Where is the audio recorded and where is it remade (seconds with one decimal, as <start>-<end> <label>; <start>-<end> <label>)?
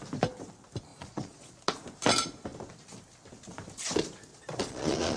0.0-0.9 recorded; 0.9-1.5 remade; 1.5-4.3 recorded; 4.3-5.2 remade